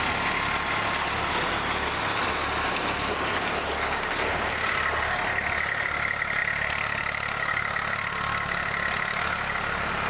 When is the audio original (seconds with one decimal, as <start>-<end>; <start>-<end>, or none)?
0.0-10.1